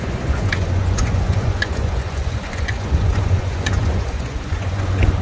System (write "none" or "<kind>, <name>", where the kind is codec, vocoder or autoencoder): vocoder, Vocos